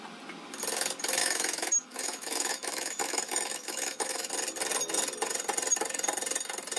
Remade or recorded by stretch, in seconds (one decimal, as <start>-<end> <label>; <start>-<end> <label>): 0.0-1.2 recorded; 1.2-4.3 remade; 4.3-6.8 recorded